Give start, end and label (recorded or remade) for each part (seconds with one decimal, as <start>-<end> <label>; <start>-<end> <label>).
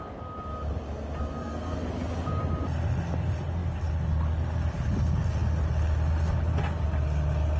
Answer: 0.0-1.4 recorded; 1.4-1.9 remade; 1.9-7.6 recorded